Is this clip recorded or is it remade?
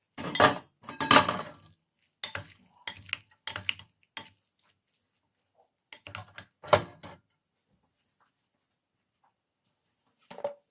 recorded